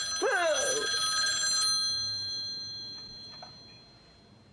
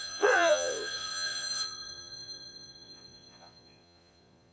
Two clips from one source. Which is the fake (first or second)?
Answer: second